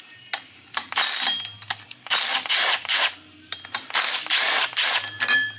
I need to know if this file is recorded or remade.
recorded